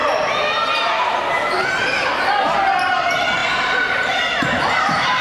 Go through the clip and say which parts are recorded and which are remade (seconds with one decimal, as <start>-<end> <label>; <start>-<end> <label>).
0.0-0.8 recorded; 0.8-1.6 remade; 1.6-2.2 recorded; 2.2-5.2 remade